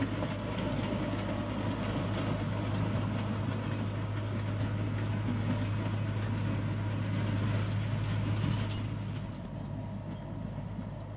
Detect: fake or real real